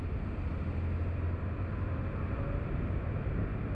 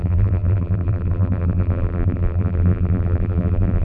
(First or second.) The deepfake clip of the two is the second